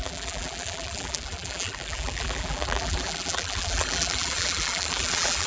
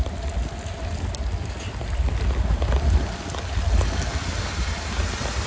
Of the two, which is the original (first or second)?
second